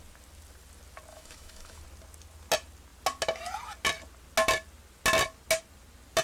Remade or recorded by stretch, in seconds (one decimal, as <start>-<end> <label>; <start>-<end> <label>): 0.0-1.1 recorded; 1.1-1.8 remade; 1.8-6.2 recorded